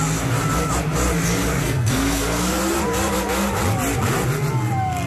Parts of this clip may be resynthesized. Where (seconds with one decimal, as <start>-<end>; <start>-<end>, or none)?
1.5-2.6